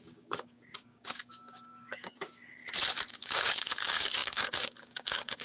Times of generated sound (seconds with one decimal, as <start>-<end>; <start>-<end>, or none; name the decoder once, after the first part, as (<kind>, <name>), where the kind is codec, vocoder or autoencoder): 0.0-2.6 (codec, DAC); 3.1-5.4